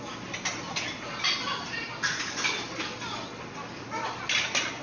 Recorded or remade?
recorded